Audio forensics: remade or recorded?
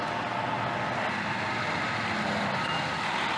recorded